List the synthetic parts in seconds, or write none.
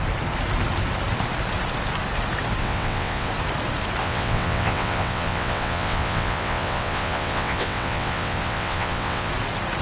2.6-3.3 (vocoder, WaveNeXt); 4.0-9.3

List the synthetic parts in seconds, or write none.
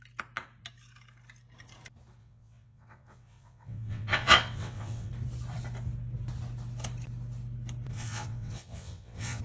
2.2-5.1 (vocoder, WaveNeXt); 7.9-9.4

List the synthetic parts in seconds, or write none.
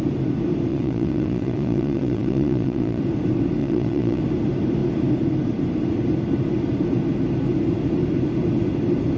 0.7-3.0 (vocoder, WaveNeXt); 3.6-4.2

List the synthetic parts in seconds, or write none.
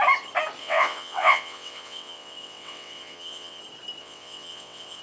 0.6-3.6 (vocoder, WaveNeXt); 4.0-5.0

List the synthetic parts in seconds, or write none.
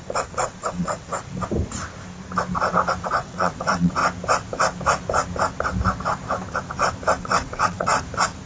0.0-1.2 (vocoder, WaveNeXt); 3.0-4.0; 7.2-7.9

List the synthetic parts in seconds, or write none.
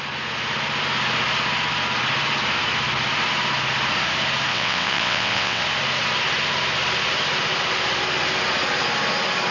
4.5-5.6 (vocoder, WaveNeXt)